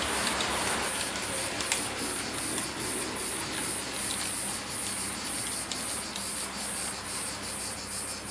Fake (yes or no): no